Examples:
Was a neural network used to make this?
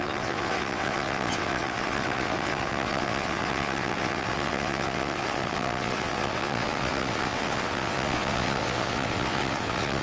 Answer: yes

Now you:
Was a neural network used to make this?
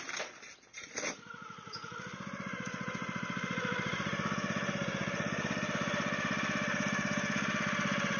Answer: yes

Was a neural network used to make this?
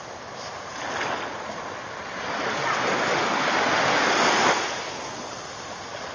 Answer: no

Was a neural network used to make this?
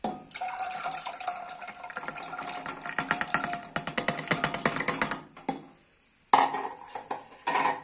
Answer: no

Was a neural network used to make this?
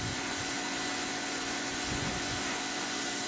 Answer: yes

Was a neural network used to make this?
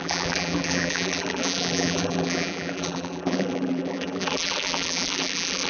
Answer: yes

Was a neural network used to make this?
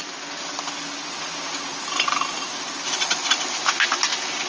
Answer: no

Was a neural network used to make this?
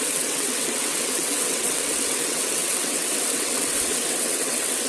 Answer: yes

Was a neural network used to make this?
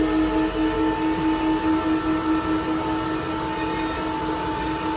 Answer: no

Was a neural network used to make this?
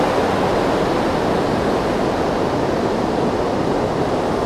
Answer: no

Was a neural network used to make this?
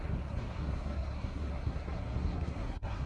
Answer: yes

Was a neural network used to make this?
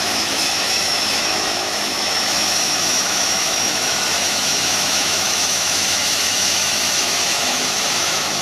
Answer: yes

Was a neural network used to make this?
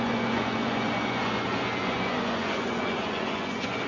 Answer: yes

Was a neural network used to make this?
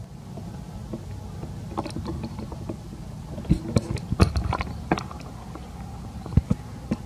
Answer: no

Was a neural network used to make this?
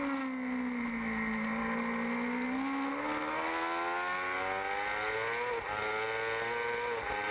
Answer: no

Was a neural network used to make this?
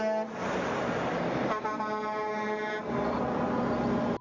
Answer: no